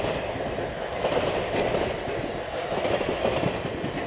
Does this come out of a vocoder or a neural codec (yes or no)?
no